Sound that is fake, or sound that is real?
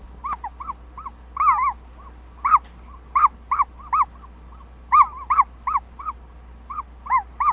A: real